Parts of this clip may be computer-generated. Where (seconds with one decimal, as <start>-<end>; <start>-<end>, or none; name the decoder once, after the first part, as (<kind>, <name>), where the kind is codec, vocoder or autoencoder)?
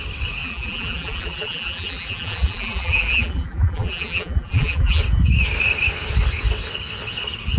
0.4-5.0 (vocoder, BigVGAN v2)